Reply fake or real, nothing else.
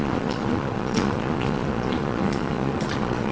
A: fake